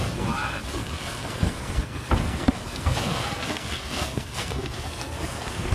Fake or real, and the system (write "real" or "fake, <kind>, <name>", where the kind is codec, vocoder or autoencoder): fake, codec, SNAC